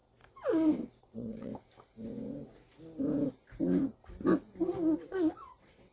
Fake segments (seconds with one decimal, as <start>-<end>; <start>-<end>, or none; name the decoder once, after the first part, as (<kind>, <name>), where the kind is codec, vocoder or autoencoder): 1.0-1.5 (vocoder, WaveNeXt); 5.0-5.9